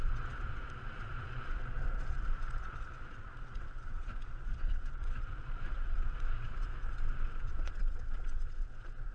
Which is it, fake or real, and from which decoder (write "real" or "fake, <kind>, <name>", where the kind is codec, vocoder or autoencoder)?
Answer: fake, vocoder, Vocos